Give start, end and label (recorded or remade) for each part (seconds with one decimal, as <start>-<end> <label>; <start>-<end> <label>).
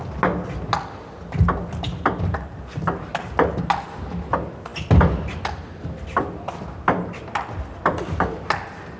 0.0-9.0 recorded